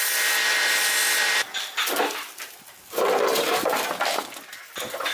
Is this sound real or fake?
real